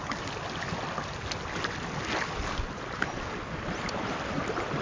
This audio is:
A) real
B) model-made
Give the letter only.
A